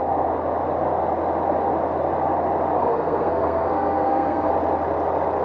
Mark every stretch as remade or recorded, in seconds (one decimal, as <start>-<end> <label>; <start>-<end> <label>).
0.0-2.8 recorded; 2.8-4.5 remade; 4.5-5.4 recorded